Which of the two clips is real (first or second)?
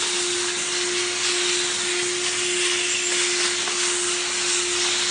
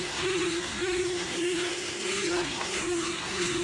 first